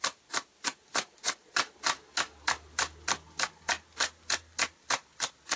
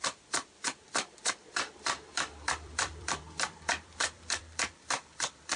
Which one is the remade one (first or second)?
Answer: second